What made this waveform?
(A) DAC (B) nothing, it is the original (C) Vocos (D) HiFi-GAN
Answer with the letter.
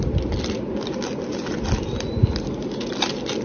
B